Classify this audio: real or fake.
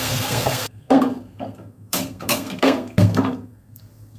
fake